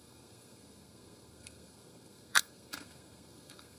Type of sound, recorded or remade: remade